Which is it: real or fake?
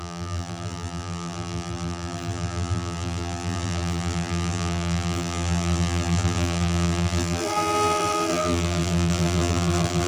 fake